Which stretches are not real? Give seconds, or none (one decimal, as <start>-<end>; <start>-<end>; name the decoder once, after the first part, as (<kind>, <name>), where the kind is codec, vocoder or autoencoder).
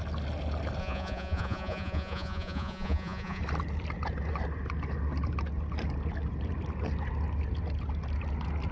0.8-3.4 (vocoder, Vocos)